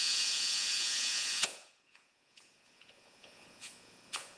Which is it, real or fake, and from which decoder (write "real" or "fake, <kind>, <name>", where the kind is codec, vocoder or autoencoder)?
fake, vocoder, Vocos